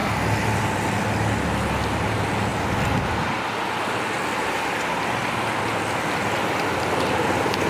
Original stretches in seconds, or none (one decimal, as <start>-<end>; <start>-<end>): 0.0-7.7